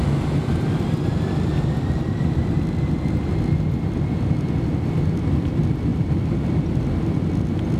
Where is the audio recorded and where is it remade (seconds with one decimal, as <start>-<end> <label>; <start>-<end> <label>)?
0.0-7.8 recorded